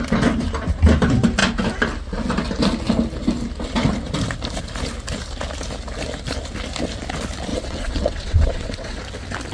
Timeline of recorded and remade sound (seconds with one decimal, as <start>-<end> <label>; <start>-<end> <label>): 0.0-7.5 recorded; 7.5-9.0 remade; 9.0-9.5 recorded